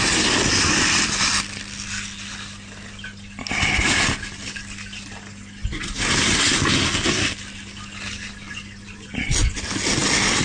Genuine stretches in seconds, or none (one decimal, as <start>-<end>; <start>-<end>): 0.0-10.4

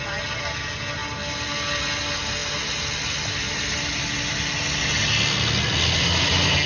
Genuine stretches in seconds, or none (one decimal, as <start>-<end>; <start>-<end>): 0.0-6.7

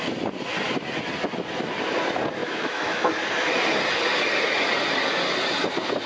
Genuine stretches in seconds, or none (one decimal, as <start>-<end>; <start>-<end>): 0.0-2.4; 3.1-6.1

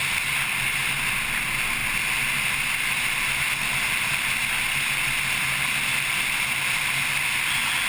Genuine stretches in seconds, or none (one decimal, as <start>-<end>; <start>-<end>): 0.0-7.9

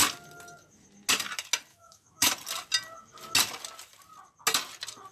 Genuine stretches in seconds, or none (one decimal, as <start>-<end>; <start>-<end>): 0.0-1.7; 2.3-5.1